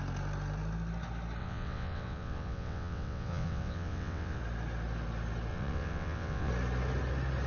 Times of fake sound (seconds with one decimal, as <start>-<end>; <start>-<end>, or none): 1.4-4.4; 5.5-6.5